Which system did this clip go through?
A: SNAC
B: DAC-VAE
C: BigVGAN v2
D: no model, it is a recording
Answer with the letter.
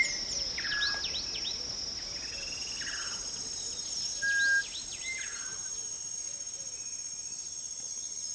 D